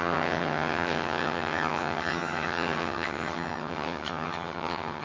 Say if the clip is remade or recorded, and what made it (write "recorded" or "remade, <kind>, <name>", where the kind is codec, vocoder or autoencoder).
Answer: remade, vocoder, HiFi-GAN